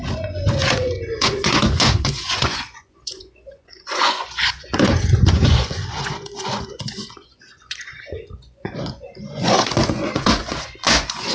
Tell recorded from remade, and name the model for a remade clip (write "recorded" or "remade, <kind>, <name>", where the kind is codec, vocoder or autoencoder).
remade, vocoder, Vocos